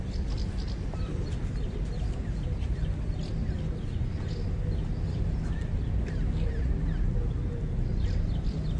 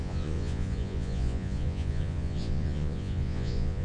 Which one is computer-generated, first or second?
second